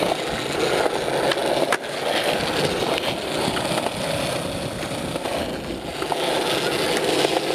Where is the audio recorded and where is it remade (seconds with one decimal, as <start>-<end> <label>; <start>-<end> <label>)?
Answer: 0.0-7.5 recorded